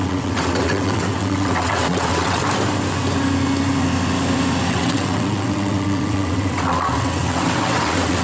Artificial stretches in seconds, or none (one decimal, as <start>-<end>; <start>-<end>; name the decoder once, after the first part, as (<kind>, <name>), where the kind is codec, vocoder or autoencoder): 0.0-2.4 (vocoder, WaveNeXt); 4.7-8.2